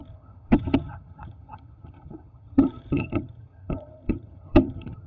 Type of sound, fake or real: fake